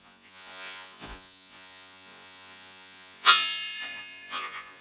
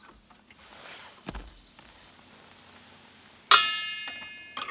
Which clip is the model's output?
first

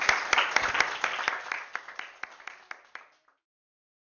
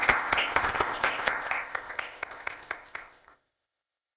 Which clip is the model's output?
second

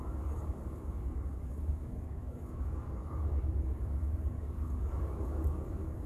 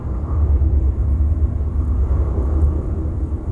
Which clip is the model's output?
first